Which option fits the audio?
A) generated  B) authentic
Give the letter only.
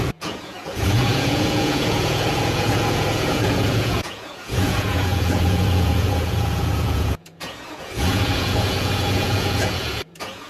A